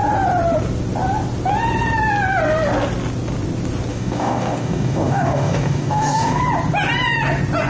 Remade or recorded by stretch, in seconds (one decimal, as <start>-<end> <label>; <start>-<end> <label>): 0.0-3.9 recorded; 3.9-6.4 remade; 6.4-7.7 recorded